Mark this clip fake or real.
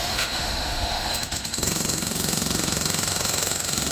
fake